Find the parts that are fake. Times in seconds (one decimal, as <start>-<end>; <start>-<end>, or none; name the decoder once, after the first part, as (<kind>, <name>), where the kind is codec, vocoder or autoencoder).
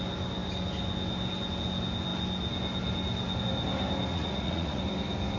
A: 4.1-4.8 (vocoder, Vocos)